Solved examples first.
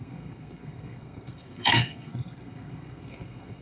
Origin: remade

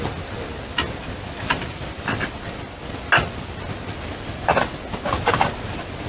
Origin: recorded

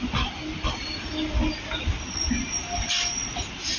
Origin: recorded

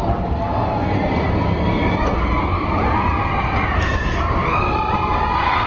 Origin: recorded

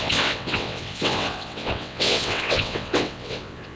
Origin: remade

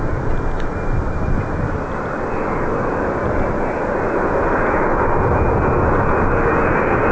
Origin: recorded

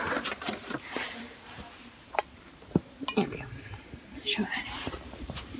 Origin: remade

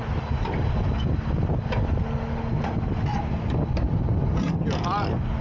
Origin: recorded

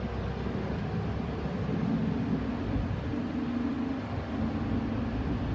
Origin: recorded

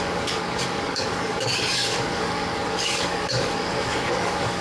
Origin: remade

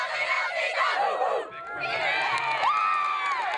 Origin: recorded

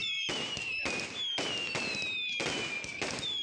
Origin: recorded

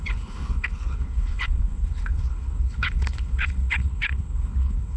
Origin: remade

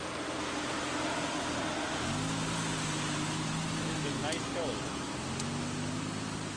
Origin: recorded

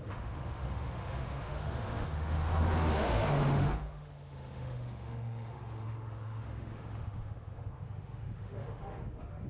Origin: remade